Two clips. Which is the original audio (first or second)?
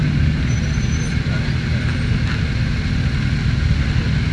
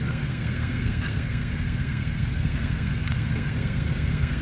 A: first